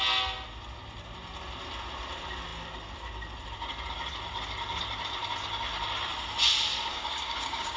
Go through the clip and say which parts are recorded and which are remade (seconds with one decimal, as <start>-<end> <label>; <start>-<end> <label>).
0.0-6.9 recorded; 6.9-7.8 remade